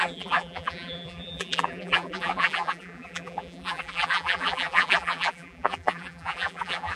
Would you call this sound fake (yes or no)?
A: yes